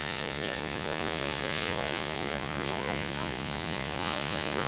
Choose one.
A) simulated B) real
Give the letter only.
A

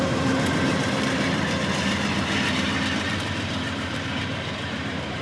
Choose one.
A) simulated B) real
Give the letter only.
A